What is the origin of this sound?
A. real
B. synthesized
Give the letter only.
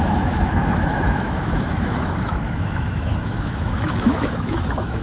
B